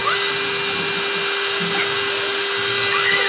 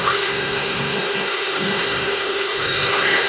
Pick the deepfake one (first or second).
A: second